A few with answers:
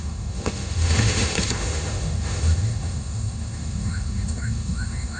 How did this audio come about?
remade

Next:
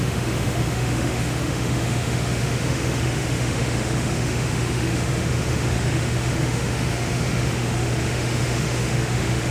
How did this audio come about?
remade